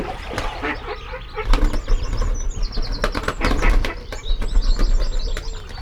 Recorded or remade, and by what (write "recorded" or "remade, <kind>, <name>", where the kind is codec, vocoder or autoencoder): recorded